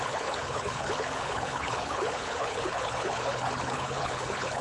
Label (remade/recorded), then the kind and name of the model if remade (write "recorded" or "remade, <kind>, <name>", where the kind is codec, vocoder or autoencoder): remade, codec, HILCodec